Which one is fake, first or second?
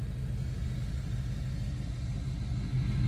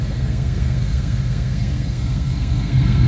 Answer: second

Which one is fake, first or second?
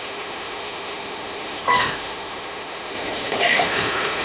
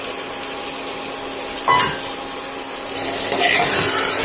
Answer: first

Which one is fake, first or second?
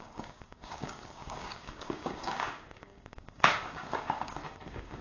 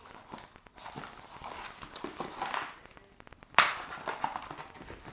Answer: first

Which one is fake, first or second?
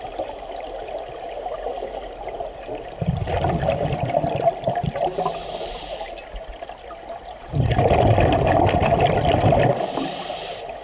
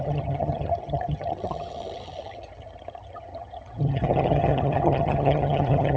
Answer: second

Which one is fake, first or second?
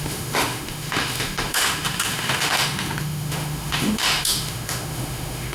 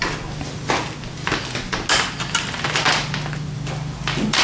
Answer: first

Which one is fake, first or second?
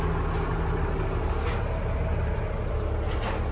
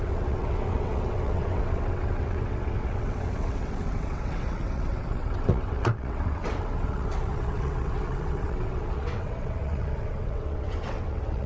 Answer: second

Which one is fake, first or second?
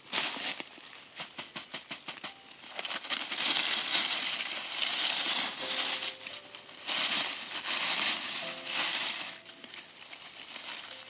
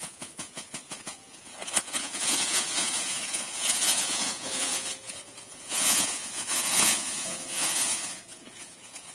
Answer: second